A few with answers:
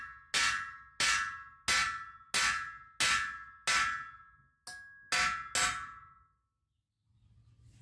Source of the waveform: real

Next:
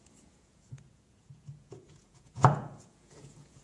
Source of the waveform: fake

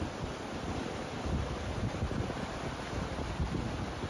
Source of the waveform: real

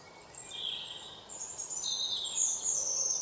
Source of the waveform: real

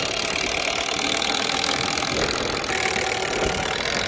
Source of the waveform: real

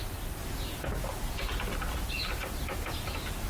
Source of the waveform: real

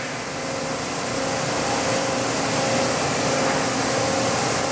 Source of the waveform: real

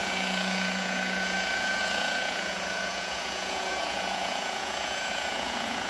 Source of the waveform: fake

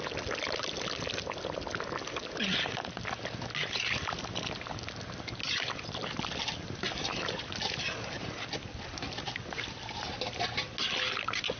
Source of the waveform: real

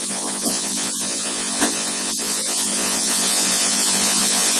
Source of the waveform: fake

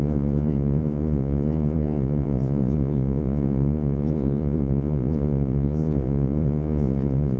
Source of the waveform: fake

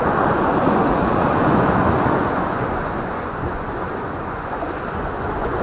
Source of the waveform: fake